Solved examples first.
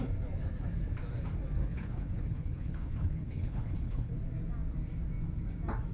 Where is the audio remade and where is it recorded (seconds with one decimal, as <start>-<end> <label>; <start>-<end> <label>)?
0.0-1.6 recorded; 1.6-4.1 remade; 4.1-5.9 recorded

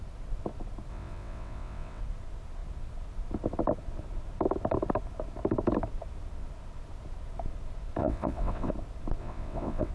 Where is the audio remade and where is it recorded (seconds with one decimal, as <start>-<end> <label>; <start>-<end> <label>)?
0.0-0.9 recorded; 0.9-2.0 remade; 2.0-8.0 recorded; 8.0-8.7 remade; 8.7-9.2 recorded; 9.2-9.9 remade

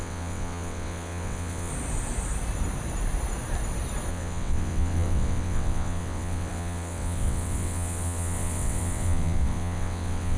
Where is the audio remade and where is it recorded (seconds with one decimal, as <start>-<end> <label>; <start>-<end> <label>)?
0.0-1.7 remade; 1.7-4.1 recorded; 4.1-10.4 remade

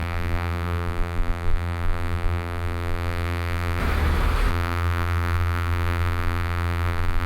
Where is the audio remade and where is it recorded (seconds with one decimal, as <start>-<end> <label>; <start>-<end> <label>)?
0.0-3.8 remade; 3.8-4.5 recorded; 4.5-7.3 remade

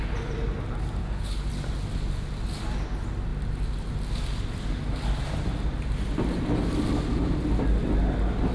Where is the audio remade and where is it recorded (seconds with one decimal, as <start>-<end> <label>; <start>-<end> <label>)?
0.0-1.0 recorded; 1.0-1.5 remade; 1.5-8.5 recorded